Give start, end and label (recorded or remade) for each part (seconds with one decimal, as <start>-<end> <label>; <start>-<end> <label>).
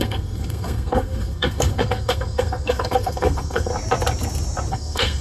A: 0.0-3.7 remade; 3.7-4.7 recorded; 4.7-5.2 remade